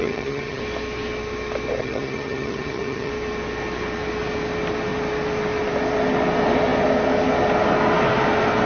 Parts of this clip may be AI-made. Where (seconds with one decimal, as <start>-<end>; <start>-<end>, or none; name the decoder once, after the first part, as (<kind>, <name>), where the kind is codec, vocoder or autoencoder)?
0.0-0.6 (vocoder, HiFi-GAN); 1.8-3.1